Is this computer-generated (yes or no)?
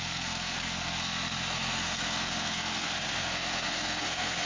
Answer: yes